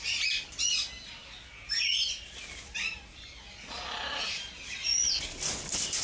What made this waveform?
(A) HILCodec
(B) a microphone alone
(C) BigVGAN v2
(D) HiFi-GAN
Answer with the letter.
B